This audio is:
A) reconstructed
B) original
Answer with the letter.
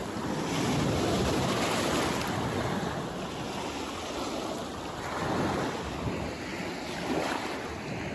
B